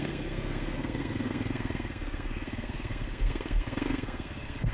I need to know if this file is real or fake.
fake